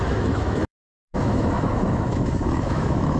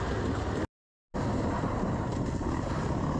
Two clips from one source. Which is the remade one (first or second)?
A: first